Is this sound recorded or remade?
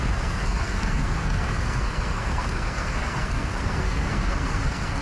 remade